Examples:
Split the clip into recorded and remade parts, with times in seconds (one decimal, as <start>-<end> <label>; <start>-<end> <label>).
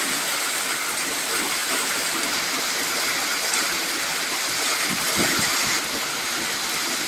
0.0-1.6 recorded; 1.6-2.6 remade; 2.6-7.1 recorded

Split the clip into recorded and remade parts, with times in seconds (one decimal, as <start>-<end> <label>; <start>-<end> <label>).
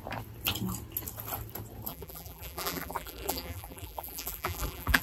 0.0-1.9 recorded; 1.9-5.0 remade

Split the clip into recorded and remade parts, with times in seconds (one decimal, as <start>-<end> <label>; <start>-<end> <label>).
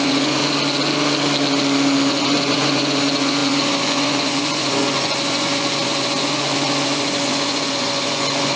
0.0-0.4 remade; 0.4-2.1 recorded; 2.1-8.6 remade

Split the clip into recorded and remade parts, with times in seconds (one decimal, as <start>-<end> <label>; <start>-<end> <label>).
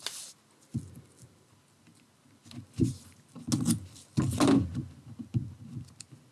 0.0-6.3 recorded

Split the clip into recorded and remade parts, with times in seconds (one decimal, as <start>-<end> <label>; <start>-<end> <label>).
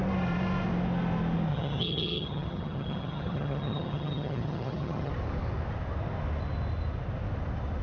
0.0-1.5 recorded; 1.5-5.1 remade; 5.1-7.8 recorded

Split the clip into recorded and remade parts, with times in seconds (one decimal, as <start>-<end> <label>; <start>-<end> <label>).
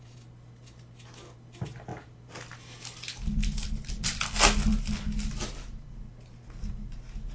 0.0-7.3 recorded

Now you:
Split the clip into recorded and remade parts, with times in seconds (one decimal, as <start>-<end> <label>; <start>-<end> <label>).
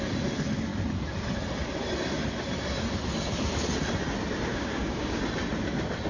0.0-4.5 recorded; 4.5-5.2 remade; 5.2-6.1 recorded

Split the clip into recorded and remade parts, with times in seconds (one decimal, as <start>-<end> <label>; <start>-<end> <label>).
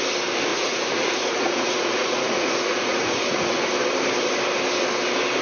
0.0-0.5 recorded; 0.5-3.7 remade; 3.7-5.4 recorded